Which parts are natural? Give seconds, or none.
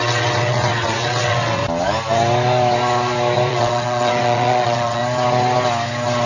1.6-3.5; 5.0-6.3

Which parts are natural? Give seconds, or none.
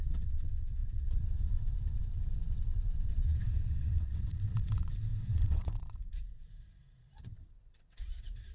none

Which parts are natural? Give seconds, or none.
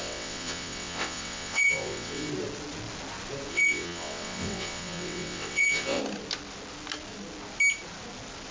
2.3-3.5; 6.0-8.5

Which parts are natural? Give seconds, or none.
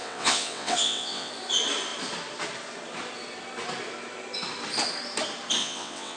1.3-5.6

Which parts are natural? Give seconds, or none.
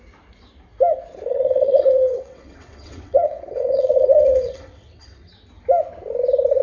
0.0-1.3; 5.3-6.6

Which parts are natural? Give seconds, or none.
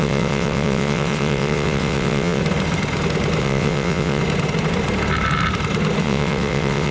2.4-3.4; 4.2-6.0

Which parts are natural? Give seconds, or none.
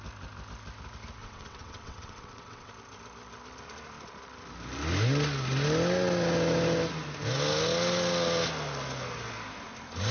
0.0-1.2; 2.7-10.1